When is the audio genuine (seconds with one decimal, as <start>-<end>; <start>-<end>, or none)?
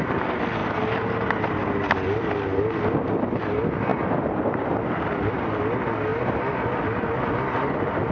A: 0.0-8.1